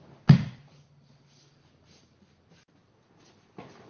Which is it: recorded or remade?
recorded